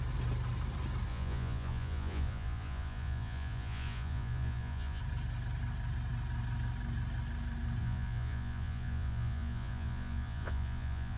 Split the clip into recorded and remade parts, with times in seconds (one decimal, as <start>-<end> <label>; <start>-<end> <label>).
0.0-1.1 recorded; 1.1-5.0 remade; 5.0-7.8 recorded; 7.8-11.2 remade